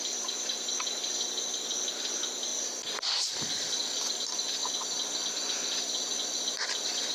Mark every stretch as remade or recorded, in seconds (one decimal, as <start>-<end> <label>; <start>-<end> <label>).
0.0-7.1 recorded